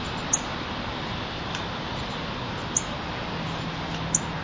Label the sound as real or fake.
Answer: real